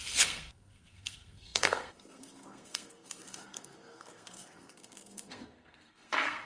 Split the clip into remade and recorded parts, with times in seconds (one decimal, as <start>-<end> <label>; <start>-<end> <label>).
0.0-6.5 remade